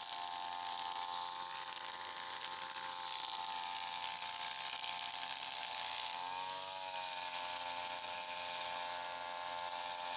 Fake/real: real